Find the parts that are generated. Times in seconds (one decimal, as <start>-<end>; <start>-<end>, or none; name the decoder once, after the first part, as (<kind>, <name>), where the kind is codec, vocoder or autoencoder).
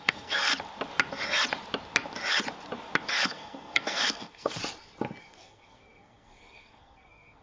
0.0-0.5 (codec, SNAC); 3.1-4.6; 5.2-7.4